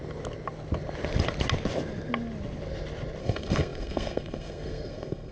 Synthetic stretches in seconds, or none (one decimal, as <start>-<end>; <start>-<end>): 3.2-5.3